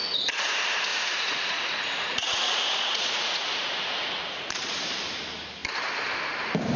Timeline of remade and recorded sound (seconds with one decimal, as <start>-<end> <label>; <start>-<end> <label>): 0.0-0.9 recorded; 0.9-4.5 remade; 4.5-6.8 recorded